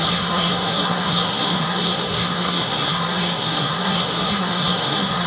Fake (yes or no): yes